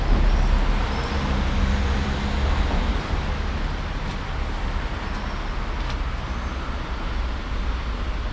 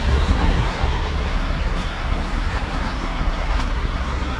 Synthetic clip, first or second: second